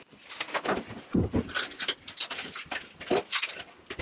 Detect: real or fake real